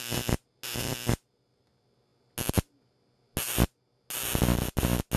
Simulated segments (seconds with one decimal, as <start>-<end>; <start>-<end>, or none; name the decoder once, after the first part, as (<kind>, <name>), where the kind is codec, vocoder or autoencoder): none